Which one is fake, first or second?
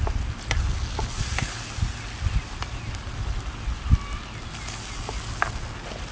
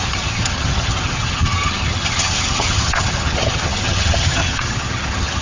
second